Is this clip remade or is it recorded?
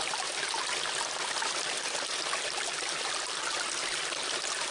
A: recorded